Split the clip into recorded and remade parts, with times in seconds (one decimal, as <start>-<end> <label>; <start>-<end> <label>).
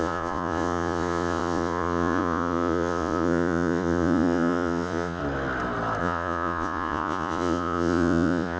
0.0-5.2 remade; 5.2-6.0 recorded; 6.0-8.6 remade